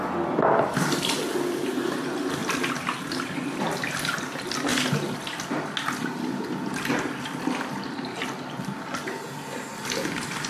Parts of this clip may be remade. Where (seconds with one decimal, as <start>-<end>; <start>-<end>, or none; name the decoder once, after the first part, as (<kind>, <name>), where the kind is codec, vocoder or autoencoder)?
none